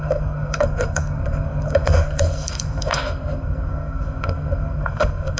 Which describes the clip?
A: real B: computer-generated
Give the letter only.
B